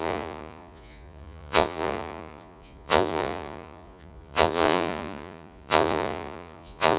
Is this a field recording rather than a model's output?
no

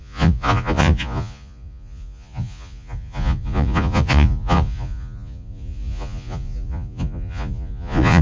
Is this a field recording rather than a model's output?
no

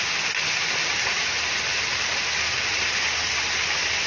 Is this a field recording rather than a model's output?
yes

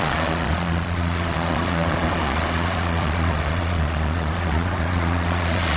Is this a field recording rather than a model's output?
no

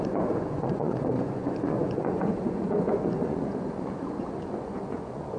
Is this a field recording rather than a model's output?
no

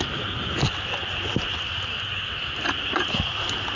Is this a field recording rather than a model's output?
yes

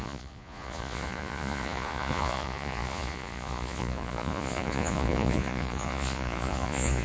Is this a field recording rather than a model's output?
no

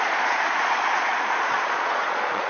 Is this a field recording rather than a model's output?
no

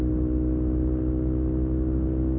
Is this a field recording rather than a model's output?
yes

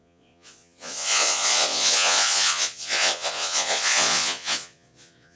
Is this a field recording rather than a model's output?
no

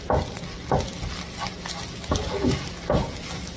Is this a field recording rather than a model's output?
yes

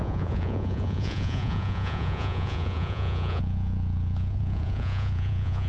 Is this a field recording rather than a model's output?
no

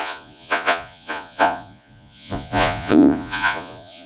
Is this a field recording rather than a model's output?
no